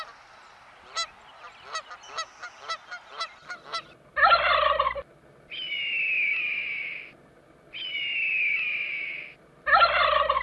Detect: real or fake real